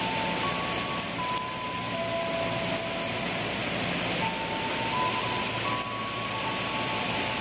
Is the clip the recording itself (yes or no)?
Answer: yes